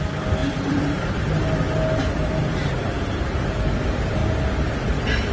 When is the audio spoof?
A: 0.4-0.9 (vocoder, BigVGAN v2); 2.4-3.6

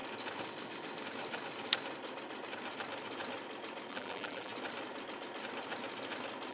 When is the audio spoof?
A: 3.9-4.5 (vocoder, BigVGAN v2)

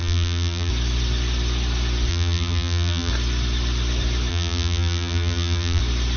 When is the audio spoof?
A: 0.0-0.7 (vocoder, BigVGAN v2); 2.1-3.1; 4.3-5.8

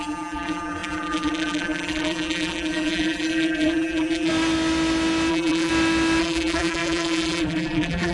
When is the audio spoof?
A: 0.0-4.3 (vocoder, BigVGAN v2); 5.3-5.7; 6.2-8.1